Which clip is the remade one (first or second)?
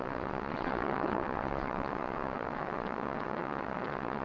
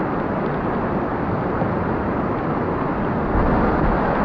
first